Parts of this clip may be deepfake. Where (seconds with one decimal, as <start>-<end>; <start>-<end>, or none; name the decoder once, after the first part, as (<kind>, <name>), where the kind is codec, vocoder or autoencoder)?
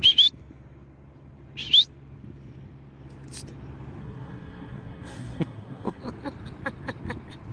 4.0-6.0 (codec, SNAC)